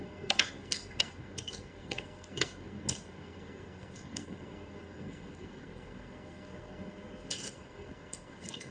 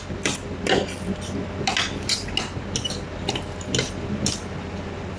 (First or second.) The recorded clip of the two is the second